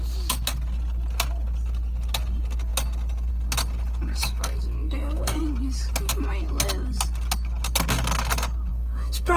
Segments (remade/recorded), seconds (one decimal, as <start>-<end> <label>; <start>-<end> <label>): 0.0-4.2 recorded; 4.2-5.4 remade; 5.4-8.7 recorded; 8.7-9.4 remade